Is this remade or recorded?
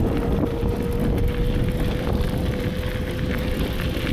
recorded